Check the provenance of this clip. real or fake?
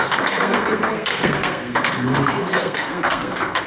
fake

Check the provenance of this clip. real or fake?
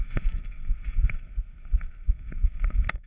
fake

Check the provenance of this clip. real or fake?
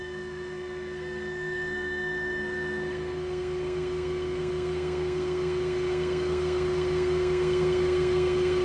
fake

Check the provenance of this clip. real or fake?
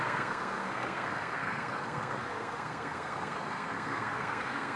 fake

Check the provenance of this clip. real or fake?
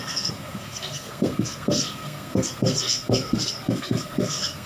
fake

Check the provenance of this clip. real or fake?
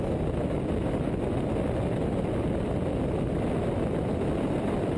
real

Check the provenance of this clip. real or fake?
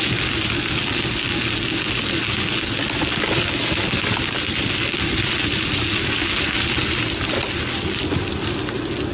real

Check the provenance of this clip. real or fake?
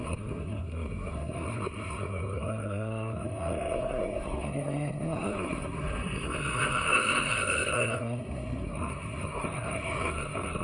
fake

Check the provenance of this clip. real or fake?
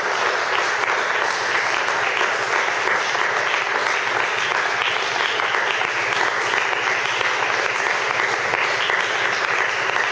real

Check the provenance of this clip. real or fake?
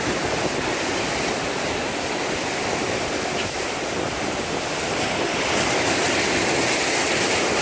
real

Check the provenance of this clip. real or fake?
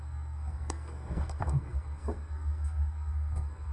fake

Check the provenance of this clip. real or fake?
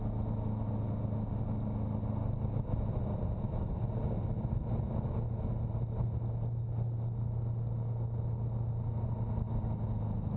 real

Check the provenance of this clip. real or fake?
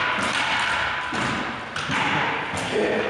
real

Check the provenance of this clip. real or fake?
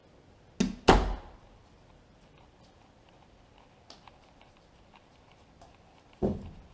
real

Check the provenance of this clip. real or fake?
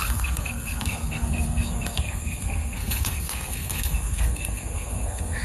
fake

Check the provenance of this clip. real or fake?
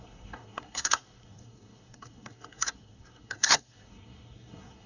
fake